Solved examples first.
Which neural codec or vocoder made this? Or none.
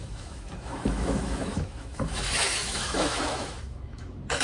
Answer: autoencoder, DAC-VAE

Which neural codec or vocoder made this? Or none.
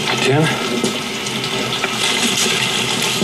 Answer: none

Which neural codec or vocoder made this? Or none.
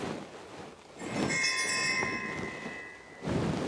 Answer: none